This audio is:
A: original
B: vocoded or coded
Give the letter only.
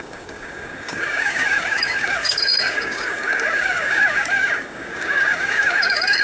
B